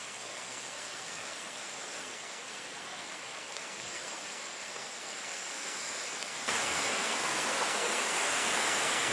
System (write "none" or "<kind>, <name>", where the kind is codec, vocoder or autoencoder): codec, SNAC